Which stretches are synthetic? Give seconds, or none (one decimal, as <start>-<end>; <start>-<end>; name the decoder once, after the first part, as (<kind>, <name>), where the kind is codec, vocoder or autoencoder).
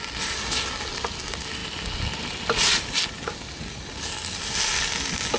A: none